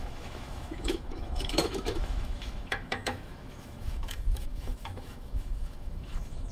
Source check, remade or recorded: remade